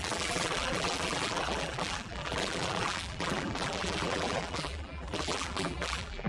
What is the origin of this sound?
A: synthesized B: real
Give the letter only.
A